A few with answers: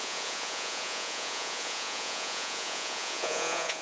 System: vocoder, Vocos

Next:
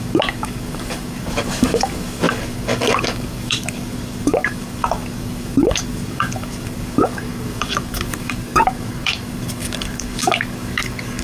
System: codec, DAC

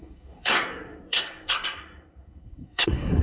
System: codec, SNAC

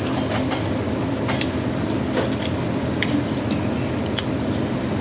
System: none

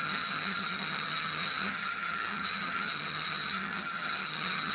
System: vocoder, HiFi-GAN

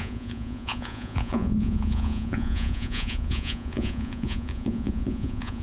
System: vocoder, Vocos